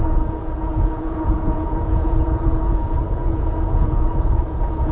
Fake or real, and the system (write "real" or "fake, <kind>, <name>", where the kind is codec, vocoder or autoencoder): fake, vocoder, Vocos